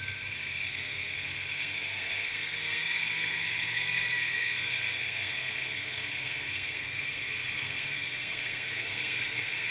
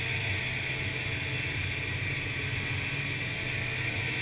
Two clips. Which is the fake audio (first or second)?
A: first